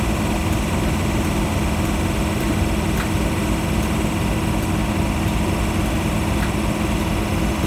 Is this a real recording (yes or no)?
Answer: yes